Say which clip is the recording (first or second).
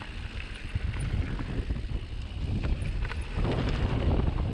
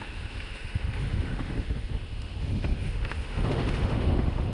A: first